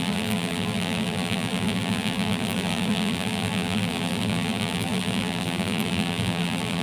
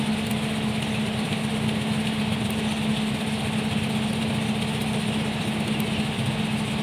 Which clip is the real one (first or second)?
second